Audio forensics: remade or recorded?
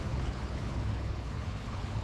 remade